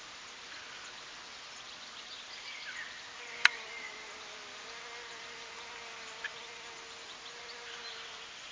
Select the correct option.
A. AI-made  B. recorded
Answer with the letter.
B